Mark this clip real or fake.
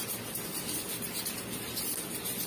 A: real